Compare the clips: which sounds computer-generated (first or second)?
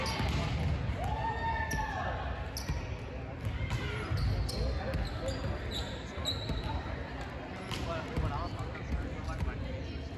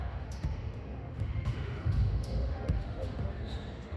second